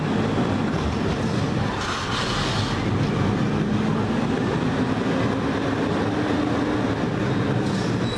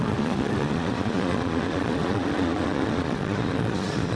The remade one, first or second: second